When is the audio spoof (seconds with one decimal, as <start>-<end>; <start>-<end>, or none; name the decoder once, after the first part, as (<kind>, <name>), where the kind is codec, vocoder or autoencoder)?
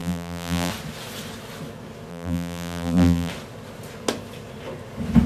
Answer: 0.0-0.7 (vocoder, BigVGAN v2); 2.1-3.3